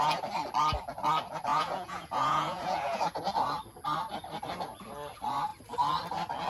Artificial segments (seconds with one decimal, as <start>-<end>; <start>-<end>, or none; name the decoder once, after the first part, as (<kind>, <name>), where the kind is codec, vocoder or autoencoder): 1.5-3.2 (vocoder, Vocos)